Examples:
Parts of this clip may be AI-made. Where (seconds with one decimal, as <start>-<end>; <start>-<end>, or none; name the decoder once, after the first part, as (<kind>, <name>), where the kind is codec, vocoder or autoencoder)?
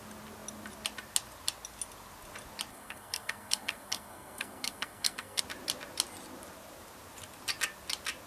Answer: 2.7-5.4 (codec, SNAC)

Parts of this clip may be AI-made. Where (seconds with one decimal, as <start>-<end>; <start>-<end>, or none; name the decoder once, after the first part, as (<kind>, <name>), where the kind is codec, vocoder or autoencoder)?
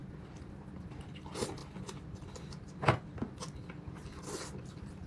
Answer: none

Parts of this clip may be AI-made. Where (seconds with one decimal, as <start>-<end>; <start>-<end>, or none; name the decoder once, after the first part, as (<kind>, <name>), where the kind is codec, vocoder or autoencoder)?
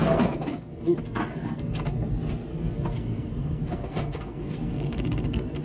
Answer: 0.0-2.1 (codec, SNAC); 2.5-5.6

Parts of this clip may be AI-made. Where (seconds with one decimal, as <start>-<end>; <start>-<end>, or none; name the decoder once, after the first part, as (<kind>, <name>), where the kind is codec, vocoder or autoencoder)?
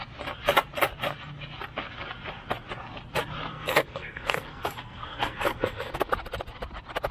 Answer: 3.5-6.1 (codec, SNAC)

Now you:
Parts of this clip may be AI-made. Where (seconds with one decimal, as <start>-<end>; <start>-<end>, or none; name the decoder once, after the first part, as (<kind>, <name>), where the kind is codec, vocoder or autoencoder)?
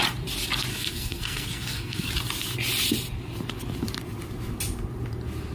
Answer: 0.7-2.1 (codec, SNAC)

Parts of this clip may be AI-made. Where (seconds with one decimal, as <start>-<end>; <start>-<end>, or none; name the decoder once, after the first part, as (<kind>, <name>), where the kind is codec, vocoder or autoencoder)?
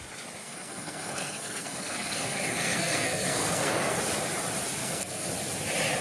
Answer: 0.4-4.0 (codec, SNAC); 4.8-5.3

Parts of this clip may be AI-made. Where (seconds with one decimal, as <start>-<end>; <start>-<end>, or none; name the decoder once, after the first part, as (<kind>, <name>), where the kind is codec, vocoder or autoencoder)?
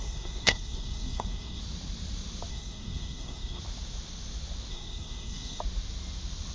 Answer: 0.0-1.6 (codec, SNAC); 2.5-3.6; 4.7-5.6